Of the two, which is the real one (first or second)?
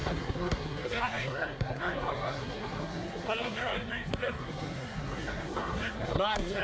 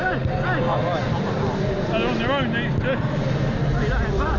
second